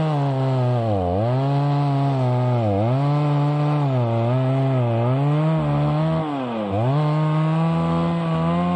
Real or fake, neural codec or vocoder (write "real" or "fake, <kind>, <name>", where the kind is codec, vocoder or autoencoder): real